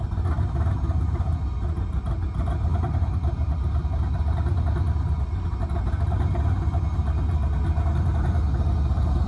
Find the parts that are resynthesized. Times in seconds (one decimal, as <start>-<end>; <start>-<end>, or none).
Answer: none